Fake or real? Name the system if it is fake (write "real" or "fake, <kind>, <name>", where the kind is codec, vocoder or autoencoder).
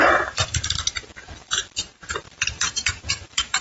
fake, vocoder, BigVGAN v2